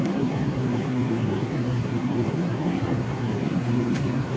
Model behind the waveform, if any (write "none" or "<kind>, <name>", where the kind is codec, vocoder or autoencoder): codec, SNAC